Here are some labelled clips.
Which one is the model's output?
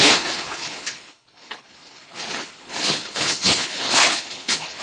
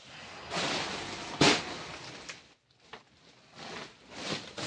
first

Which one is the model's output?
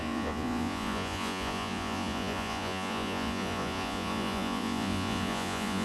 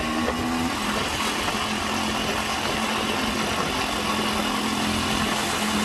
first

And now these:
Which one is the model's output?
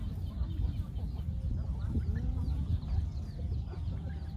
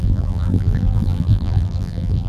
second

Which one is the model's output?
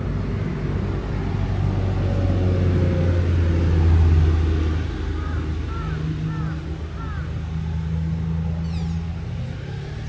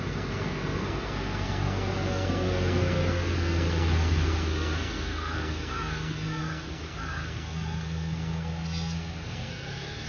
second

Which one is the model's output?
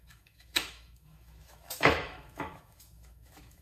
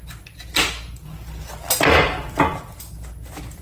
first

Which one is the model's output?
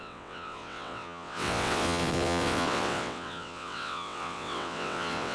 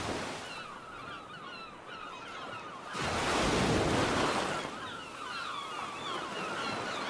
first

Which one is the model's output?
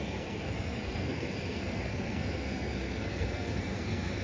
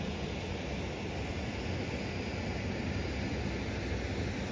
first